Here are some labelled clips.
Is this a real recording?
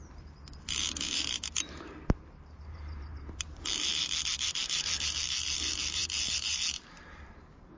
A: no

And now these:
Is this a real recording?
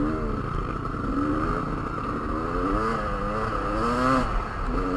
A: yes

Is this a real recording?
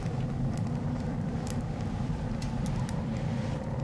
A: no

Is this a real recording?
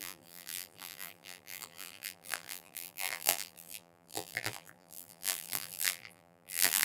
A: no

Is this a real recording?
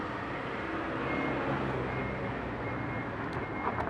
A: yes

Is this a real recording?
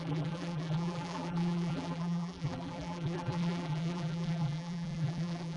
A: no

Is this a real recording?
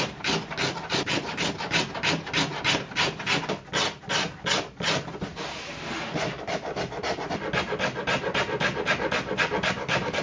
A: yes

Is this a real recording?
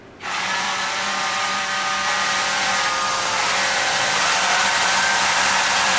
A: no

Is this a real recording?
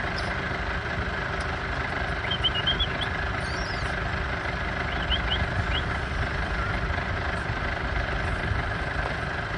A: no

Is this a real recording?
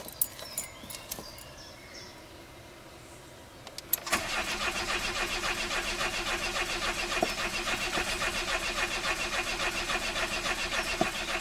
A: yes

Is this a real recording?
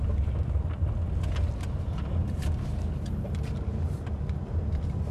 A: yes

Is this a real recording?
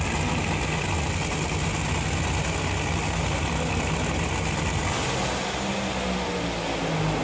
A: yes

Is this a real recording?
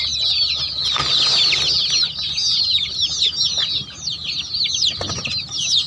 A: yes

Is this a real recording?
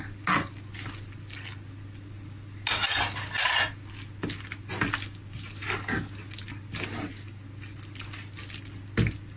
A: yes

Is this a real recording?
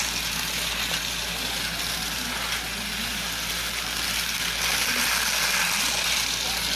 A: yes